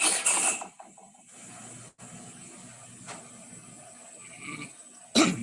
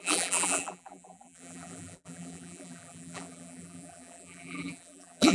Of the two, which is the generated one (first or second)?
second